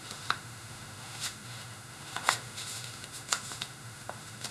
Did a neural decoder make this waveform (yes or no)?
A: yes